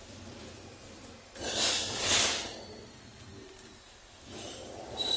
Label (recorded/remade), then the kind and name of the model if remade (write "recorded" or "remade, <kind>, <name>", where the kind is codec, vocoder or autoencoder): recorded